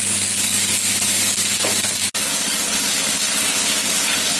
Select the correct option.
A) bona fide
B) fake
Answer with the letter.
B